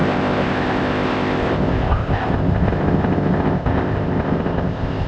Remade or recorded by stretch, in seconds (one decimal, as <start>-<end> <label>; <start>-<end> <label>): 0.0-5.1 remade